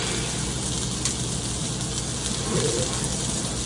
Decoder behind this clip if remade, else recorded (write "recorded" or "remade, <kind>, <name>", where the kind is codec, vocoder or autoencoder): recorded